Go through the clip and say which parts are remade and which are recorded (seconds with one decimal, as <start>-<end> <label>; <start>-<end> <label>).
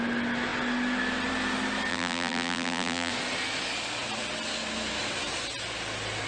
0.0-1.9 recorded; 1.9-3.1 remade; 3.1-6.3 recorded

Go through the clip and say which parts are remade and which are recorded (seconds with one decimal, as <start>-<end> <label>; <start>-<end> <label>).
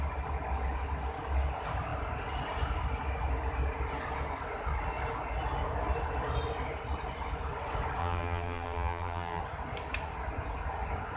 0.0-8.0 recorded; 8.0-9.4 remade; 9.4-11.2 recorded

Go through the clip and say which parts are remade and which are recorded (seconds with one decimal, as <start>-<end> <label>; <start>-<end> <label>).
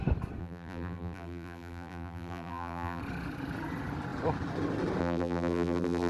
0.0-0.4 recorded; 0.4-3.0 remade; 3.0-5.0 recorded; 5.0-6.1 remade